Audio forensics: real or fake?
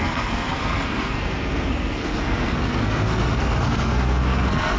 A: fake